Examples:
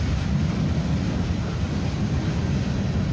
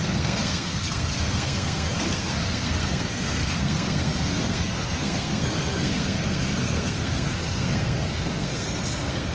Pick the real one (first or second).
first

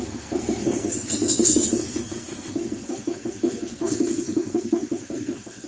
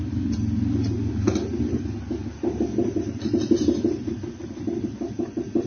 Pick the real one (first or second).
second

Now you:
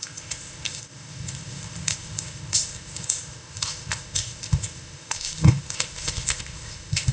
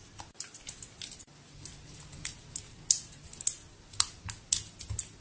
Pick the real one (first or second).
second